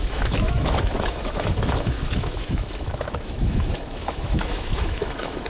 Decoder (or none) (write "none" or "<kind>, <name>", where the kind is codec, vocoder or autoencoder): autoencoder, DAC-VAE